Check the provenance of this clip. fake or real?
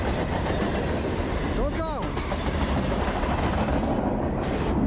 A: real